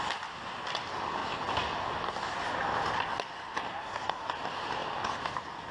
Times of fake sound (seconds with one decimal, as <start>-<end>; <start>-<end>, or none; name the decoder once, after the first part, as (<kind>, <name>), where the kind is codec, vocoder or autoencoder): 3.7-4.3 (codec, SNAC)